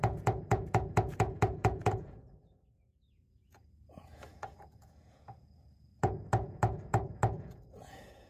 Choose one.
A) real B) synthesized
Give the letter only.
B